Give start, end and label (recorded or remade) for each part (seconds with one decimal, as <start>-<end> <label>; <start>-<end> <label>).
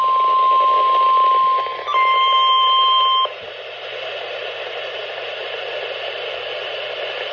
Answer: 0.0-1.7 recorded; 1.7-6.1 remade; 6.1-7.3 recorded